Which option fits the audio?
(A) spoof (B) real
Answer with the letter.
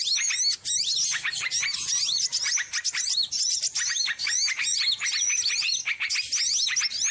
B